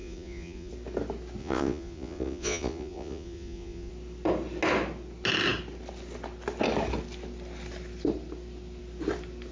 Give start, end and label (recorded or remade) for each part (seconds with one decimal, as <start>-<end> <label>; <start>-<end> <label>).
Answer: 0.0-0.7 remade; 0.7-1.4 recorded; 1.4-3.9 remade; 3.9-9.5 recorded